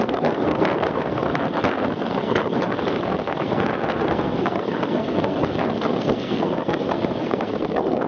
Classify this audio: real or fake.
fake